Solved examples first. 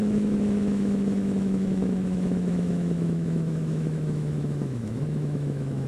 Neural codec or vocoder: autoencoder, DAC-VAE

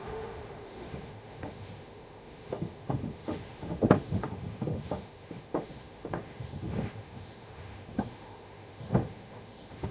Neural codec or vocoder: autoencoder, DAC-VAE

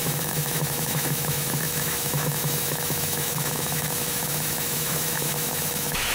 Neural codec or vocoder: autoencoder, DAC-VAE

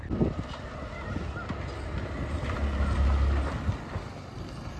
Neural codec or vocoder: none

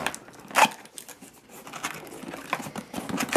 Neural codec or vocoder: none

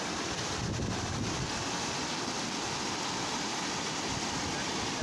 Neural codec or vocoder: none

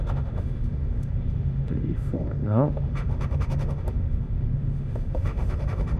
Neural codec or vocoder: autoencoder, DAC-VAE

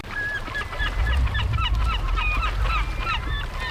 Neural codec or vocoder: none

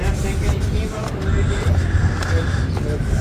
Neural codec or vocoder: none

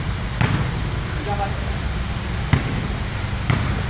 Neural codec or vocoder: none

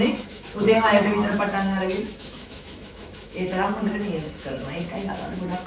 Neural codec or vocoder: autoencoder, DAC-VAE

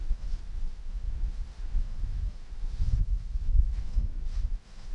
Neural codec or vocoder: autoencoder, DAC-VAE